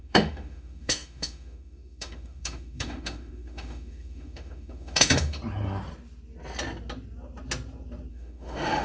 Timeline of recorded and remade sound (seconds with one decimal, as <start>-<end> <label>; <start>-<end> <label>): 0.0-5.4 remade; 5.4-8.1 recorded; 8.1-8.8 remade